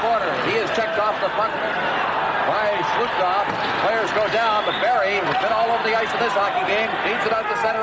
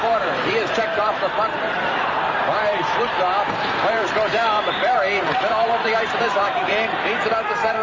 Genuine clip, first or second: first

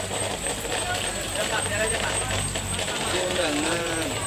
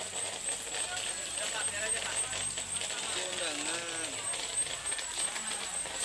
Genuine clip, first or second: second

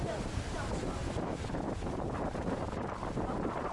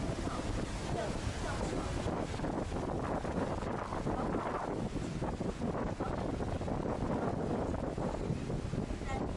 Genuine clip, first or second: second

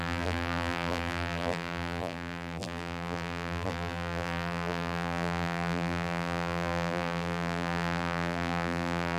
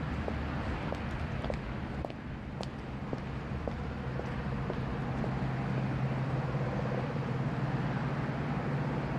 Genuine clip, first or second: second